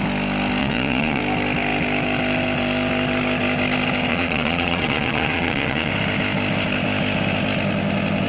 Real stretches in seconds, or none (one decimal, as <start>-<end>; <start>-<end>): 0.0-0.6; 1.2-4.1; 5.9-8.3

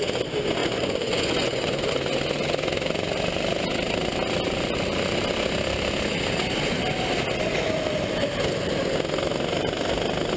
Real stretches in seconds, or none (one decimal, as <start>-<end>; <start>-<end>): 0.0-0.6; 1.9-10.4